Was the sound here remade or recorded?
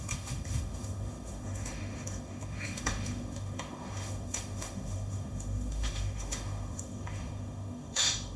remade